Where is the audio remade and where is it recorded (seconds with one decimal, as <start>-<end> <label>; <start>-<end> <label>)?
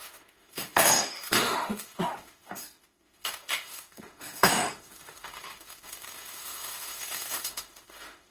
0.0-8.3 remade